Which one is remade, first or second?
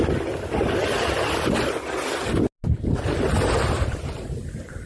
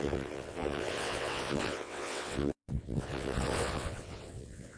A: second